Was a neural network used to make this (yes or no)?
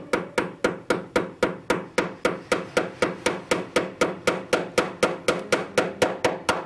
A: no